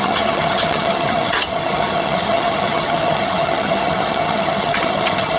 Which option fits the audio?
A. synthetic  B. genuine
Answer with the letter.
A